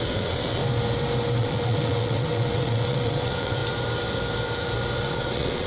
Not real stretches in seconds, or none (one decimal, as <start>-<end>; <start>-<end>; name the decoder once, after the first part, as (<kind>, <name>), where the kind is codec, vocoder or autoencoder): 0.0-0.6 (vocoder, WaveNeXt); 1.4-3.6; 5.0-5.7